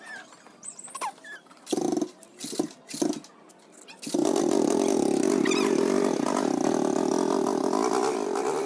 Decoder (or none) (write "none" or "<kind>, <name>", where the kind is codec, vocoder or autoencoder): none